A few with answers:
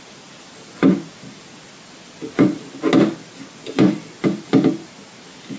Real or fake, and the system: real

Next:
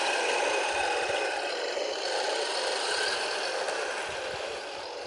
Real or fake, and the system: real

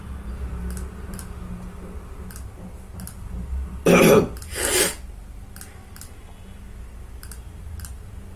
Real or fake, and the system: real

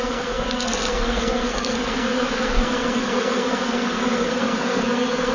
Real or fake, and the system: fake, codec, SNAC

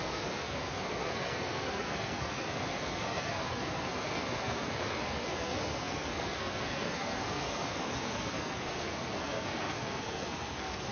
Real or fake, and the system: fake, codec, SNAC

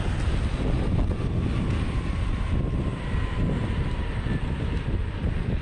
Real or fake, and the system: real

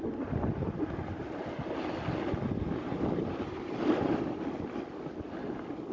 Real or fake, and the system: real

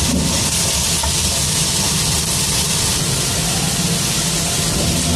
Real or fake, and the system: real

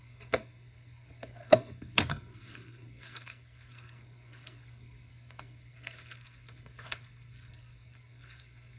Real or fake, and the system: fake, codec, SNAC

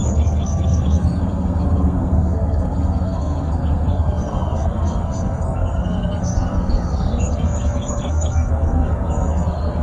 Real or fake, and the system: fake, codec, SNAC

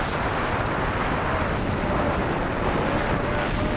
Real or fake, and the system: real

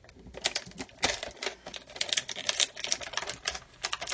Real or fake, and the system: real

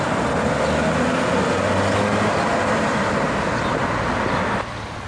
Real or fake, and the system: real